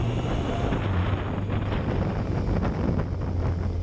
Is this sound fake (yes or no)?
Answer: no